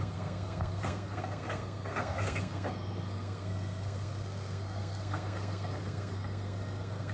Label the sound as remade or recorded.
remade